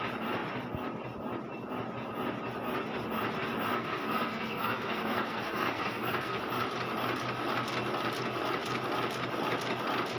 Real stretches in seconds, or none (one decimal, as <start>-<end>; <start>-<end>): 0.0-3.7; 6.4-10.2